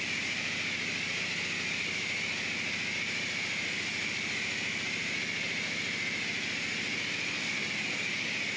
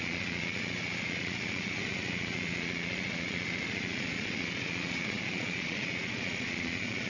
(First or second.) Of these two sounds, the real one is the first